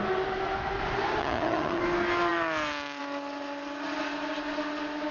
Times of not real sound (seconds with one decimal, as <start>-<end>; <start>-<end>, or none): 1.2-1.8